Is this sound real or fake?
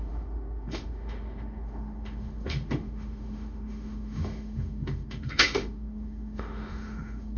fake